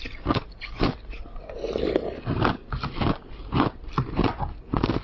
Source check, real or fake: real